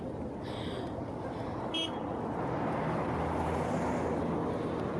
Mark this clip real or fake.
real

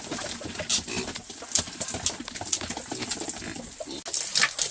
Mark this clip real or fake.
real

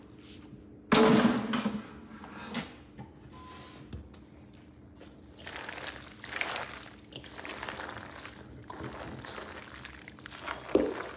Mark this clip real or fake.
real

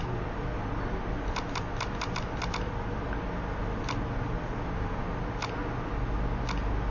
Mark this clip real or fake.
real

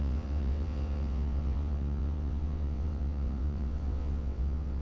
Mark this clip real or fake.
fake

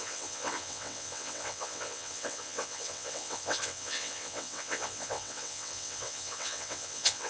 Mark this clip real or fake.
fake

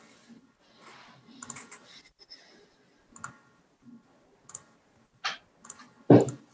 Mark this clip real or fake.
real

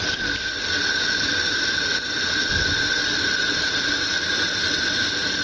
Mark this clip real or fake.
real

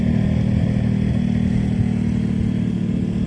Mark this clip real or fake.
real